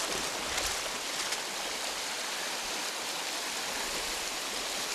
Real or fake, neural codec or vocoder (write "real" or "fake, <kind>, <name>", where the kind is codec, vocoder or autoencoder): real